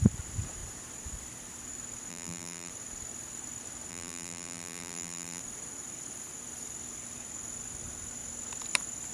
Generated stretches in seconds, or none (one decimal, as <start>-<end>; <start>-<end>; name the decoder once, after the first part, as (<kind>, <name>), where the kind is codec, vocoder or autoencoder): 2.1-2.7 (vocoder, BigVGAN v2); 3.9-5.4

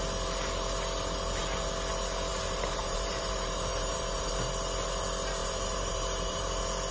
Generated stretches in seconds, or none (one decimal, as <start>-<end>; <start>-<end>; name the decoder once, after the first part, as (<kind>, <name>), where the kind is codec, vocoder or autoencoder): 2.3-4.3 (vocoder, BigVGAN v2); 5.4-6.5

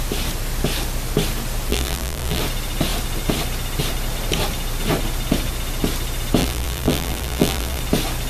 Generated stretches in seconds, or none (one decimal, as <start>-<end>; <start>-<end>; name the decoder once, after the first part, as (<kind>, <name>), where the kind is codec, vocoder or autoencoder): 1.7-2.4 (vocoder, BigVGAN v2); 6.4-7.8

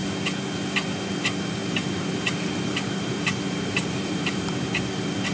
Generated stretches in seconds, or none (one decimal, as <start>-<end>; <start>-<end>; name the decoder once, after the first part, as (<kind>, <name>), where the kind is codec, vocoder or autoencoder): 1.6-4.4 (vocoder, BigVGAN v2)

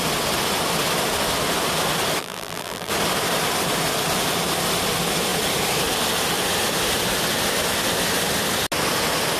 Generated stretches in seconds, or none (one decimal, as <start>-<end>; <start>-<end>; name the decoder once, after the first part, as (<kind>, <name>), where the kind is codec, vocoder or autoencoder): 2.2-2.9 (vocoder, BigVGAN v2)